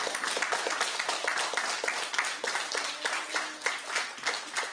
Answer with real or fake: real